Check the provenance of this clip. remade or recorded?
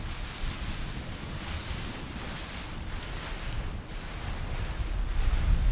recorded